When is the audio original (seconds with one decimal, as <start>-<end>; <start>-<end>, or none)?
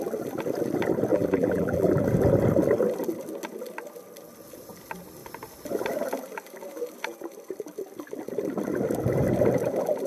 0.0-1.1; 2.0-10.1